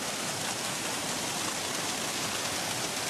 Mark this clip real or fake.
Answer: real